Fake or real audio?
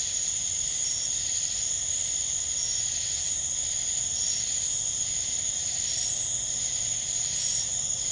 fake